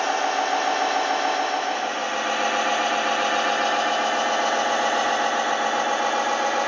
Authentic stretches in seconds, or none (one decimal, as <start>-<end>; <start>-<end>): 0.0-6.7